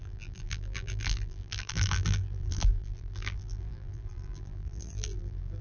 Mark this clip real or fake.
fake